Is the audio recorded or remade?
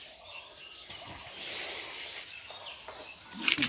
recorded